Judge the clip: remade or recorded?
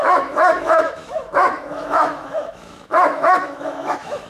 remade